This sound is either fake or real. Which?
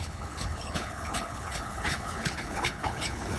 fake